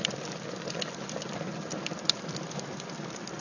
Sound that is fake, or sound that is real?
real